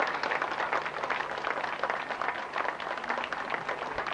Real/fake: real